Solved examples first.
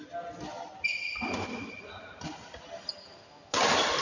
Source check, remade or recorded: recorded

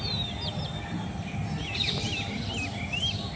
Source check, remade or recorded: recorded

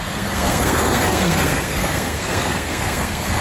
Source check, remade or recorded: remade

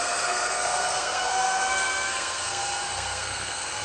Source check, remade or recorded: remade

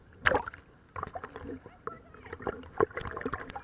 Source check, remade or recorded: recorded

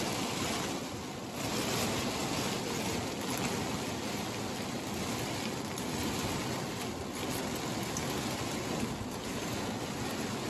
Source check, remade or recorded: recorded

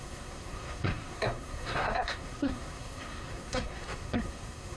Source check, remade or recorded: remade